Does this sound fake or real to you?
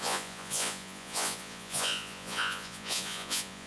fake